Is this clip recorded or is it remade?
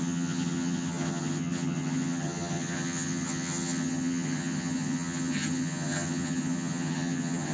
remade